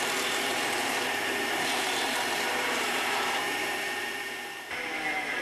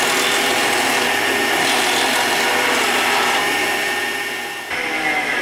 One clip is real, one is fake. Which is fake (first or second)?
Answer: first